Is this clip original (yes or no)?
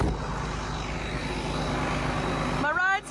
yes